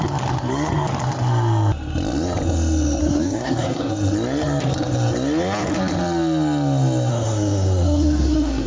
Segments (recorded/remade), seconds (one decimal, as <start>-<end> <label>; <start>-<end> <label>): 0.0-3.0 recorded; 3.0-3.9 remade; 3.9-7.1 recorded; 7.1-8.7 remade